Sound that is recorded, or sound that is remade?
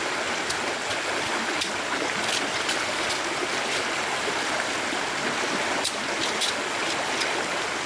recorded